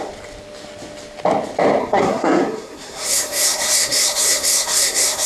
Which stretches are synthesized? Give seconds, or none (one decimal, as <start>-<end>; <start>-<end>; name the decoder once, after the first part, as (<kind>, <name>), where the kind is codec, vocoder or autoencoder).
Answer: 1.8-5.3 (codec, SNAC)